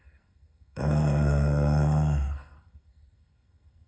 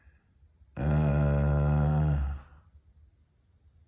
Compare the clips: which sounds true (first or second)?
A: second